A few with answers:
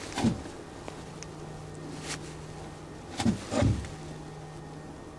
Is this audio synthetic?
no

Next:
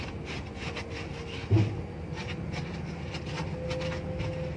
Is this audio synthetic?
no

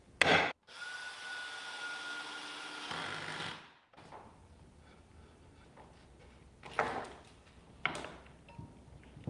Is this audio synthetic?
no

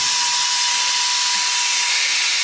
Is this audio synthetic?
no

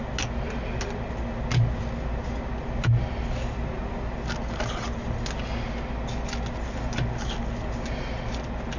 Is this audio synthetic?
no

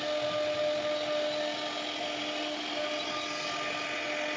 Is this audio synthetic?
no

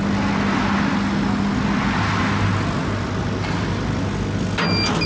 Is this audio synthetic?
no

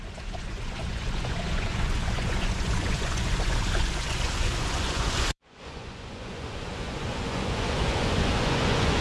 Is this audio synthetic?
yes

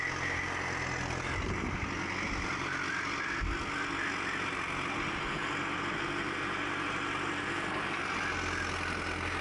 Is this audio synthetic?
no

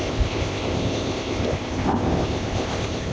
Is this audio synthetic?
yes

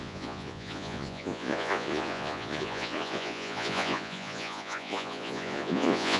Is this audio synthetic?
yes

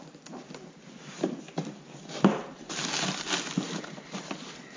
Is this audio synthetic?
no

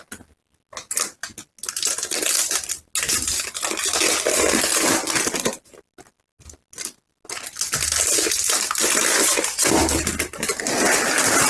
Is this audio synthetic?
no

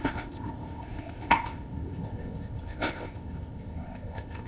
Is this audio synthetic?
yes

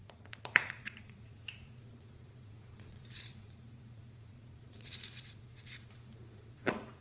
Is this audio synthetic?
yes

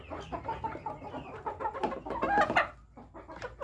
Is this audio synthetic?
no